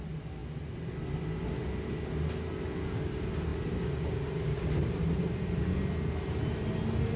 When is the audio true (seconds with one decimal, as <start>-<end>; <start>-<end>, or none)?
0.0-7.2